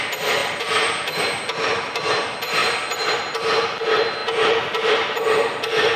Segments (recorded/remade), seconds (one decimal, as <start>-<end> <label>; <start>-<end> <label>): 0.0-0.4 recorded; 0.4-1.2 remade; 1.2-4.2 recorded; 4.2-4.9 remade; 4.9-6.0 recorded